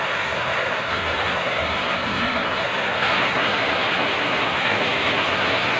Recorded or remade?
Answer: remade